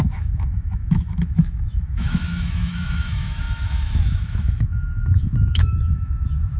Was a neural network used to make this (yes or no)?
yes